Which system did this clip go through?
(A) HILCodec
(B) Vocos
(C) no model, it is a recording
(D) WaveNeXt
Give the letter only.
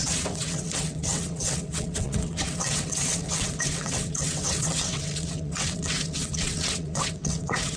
D